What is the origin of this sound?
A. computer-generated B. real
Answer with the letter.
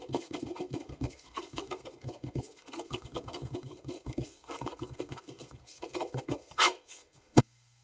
A